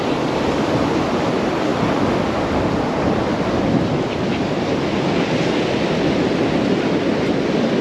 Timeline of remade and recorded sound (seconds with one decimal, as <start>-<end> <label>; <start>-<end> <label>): 0.0-7.8 recorded